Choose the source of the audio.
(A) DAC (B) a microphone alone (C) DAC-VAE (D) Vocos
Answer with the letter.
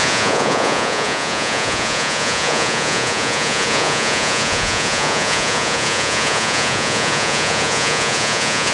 D